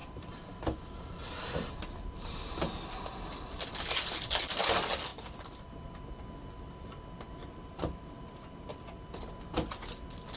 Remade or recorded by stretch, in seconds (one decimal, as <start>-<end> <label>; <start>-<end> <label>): 0.0-2.4 remade; 2.4-5.1 recorded; 5.1-5.7 remade; 5.7-7.4 recorded; 7.4-8.7 remade; 8.7-10.4 recorded